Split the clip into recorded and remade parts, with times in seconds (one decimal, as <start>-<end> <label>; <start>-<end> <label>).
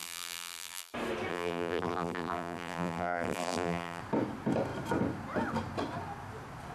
0.0-0.9 remade; 0.9-1.3 recorded; 1.3-4.0 remade; 4.0-6.7 recorded